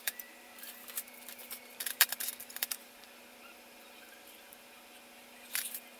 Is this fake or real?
fake